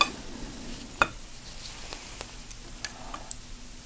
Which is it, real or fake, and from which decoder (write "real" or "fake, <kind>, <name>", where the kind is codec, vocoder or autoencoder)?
real